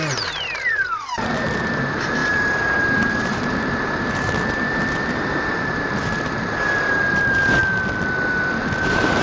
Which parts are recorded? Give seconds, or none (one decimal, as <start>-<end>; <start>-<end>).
7.6-8.6

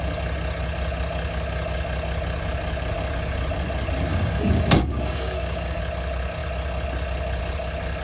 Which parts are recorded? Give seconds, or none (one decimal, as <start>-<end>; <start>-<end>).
0.0-4.1; 5.8-8.0